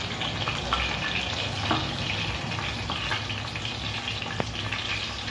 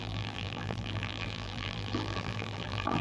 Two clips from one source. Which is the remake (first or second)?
second